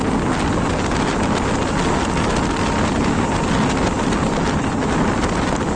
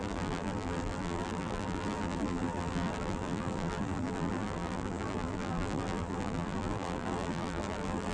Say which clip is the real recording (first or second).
first